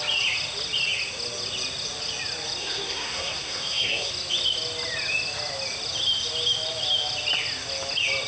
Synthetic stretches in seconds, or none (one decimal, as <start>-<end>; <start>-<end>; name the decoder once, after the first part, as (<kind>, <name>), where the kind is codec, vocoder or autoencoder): 2.6-4.1 (codec, SNAC)